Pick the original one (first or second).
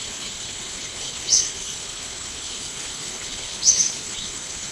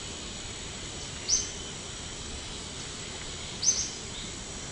second